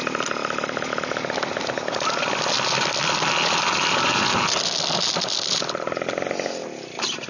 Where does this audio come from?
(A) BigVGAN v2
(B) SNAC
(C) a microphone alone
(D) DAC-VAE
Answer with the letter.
C